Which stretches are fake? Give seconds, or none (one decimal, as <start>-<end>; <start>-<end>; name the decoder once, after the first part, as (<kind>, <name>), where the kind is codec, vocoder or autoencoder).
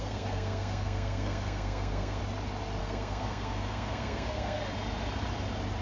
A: 0.0-2.2 (codec, SNAC); 2.8-4.6